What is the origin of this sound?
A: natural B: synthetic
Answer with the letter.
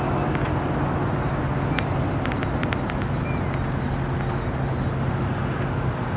A